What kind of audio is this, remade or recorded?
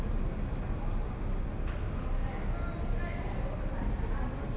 recorded